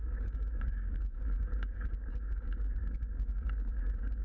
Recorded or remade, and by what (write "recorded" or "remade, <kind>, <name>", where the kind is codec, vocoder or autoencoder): remade, codec, DAC